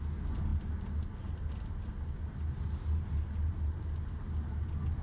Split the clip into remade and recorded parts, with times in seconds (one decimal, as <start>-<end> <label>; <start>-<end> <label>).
0.0-5.0 recorded